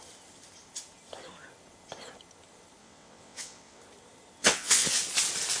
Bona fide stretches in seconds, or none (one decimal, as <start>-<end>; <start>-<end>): 0.0-2.8; 3.8-4.4; 5.0-5.6